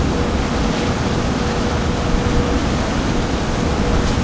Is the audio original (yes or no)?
yes